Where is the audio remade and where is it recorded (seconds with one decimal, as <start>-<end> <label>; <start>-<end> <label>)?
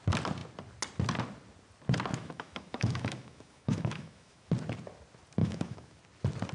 0.0-2.1 recorded; 2.1-4.5 remade; 4.5-5.4 recorded; 5.4-6.0 remade; 6.0-6.5 recorded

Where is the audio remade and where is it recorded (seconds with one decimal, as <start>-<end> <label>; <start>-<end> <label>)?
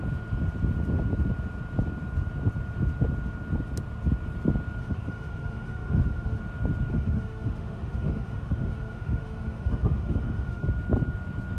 0.0-4.8 recorded; 4.8-6.4 remade; 6.4-6.9 recorded; 6.9-10.6 remade; 10.6-11.6 recorded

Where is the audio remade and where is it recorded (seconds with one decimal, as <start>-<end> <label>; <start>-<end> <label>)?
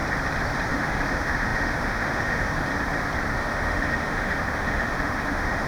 0.0-0.7 recorded; 0.7-2.7 remade; 2.7-3.3 recorded; 3.3-5.7 remade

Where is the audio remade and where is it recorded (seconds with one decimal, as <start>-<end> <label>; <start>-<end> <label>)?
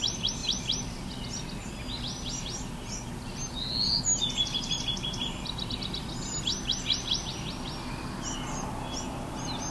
0.0-9.7 recorded